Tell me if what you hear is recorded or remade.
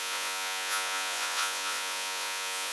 remade